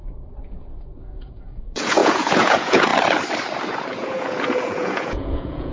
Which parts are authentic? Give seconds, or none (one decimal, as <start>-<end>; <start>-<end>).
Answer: 2.9-3.7